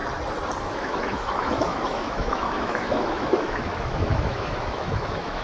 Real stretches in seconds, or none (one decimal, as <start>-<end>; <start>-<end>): 0.0-0.6